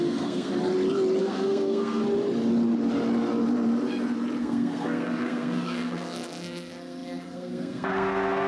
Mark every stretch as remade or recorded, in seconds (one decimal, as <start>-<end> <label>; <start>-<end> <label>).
0.0-0.5 remade; 0.5-1.2 recorded; 1.2-2.0 remade; 2.0-4.4 recorded; 4.4-8.5 remade